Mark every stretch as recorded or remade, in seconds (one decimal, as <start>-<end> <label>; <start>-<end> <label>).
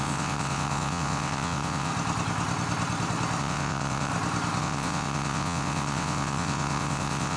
0.0-1.9 remade; 1.9-3.4 recorded; 3.4-4.1 remade; 4.1-4.6 recorded; 4.6-7.4 remade